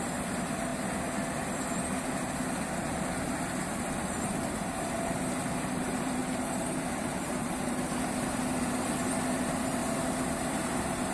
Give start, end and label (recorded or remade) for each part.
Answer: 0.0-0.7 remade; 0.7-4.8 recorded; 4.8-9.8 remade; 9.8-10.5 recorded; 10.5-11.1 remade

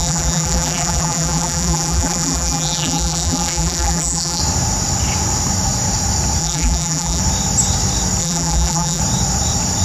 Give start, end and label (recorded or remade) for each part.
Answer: 0.0-4.4 remade; 4.4-6.4 recorded; 6.4-7.2 remade; 7.2-8.2 recorded; 8.2-9.0 remade; 9.0-9.8 recorded

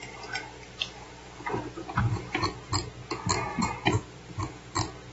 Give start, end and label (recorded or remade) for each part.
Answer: 0.0-3.5 recorded; 3.5-4.5 remade; 4.5-5.1 recorded